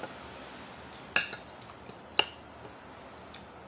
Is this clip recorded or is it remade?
recorded